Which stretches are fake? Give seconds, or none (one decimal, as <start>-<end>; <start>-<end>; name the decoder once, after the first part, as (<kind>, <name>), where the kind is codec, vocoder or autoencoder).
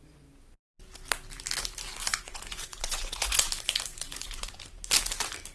2.1-3.5 (vocoder, Vocos); 3.9-4.6